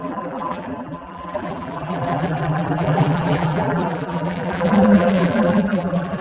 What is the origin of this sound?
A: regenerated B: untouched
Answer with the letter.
A